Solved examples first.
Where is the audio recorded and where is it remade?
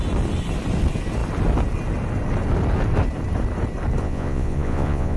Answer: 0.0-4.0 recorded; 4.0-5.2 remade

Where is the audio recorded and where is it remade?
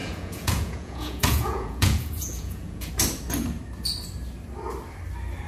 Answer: 0.0-2.9 remade; 2.9-5.5 recorded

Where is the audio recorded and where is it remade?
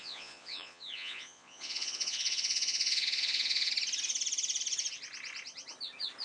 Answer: 0.0-3.7 remade; 3.7-6.2 recorded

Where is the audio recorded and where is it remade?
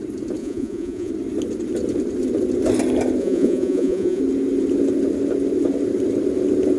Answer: 0.0-0.4 recorded; 0.4-1.1 remade; 1.1-3.2 recorded; 3.2-4.2 remade; 4.2-6.8 recorded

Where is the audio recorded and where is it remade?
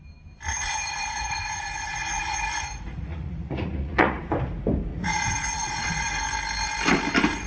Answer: 0.0-0.5 recorded; 0.5-4.2 remade; 4.2-4.9 recorded; 4.9-6.2 remade; 6.2-7.5 recorded